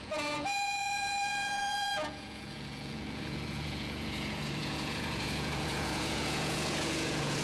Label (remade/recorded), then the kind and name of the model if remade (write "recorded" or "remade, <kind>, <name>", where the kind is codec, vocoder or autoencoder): remade, vocoder, Vocos